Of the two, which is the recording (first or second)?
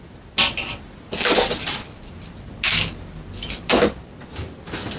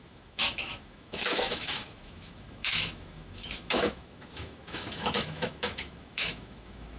first